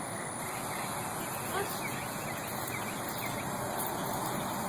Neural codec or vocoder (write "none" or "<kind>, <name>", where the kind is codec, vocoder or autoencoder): none